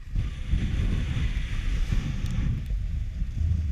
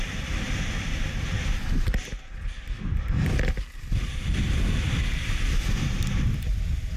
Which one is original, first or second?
first